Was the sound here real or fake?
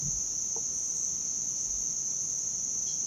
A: real